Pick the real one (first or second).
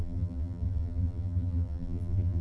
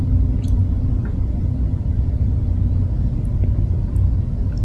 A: second